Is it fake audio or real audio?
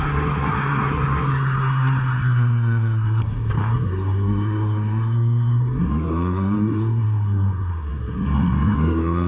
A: fake